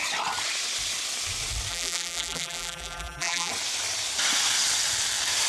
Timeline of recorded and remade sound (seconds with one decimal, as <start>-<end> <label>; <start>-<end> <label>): 0.0-1.7 recorded; 1.7-3.5 remade; 3.5-5.5 recorded